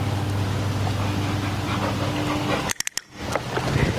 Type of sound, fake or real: real